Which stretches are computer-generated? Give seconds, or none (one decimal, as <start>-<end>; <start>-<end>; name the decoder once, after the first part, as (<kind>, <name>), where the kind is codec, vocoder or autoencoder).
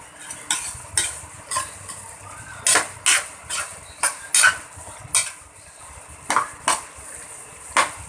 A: none